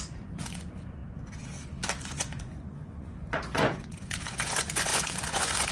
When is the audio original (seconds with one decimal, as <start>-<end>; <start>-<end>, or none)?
1.0-2.0

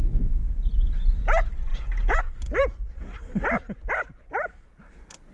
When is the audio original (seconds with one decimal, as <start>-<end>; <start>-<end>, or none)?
0.0-1.7; 2.2-5.3

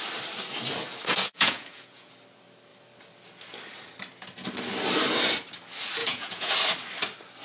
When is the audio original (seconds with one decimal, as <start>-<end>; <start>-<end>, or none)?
0.0-1.2; 2.1-6.0; 6.5-7.4

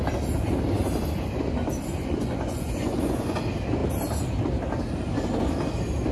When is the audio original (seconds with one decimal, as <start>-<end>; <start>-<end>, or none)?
0.0-2.0; 3.4-6.1

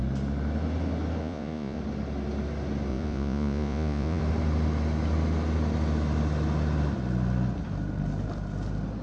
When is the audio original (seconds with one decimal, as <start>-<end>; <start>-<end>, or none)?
0.0-1.2; 1.8-2.9; 4.2-9.0

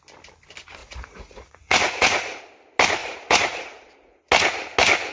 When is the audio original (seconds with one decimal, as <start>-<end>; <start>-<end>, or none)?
0.0-0.8; 2.4-3.0; 4.2-5.1